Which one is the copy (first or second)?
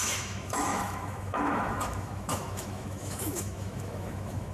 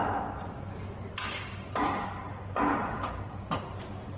first